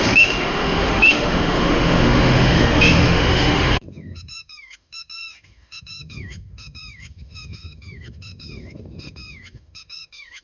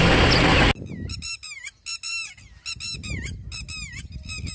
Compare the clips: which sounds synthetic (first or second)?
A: first